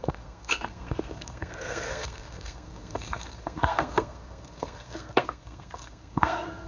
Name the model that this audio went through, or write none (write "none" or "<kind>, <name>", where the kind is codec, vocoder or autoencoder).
codec, SNAC